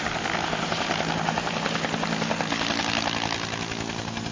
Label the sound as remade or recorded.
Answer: recorded